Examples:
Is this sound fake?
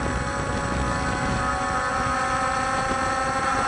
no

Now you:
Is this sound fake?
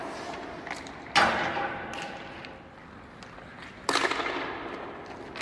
no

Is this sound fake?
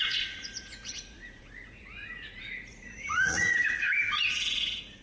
yes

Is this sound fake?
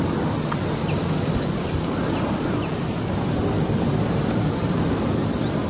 no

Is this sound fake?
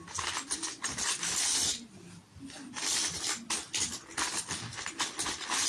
no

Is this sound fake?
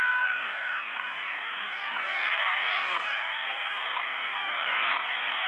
yes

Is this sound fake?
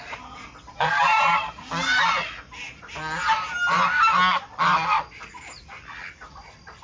no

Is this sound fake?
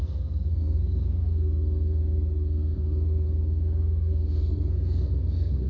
yes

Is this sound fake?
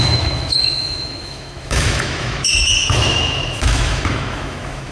yes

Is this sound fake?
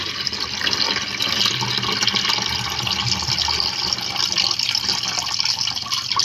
no